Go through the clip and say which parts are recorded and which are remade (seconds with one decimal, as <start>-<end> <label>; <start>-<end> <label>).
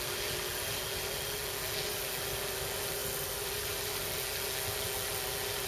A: 0.0-5.7 recorded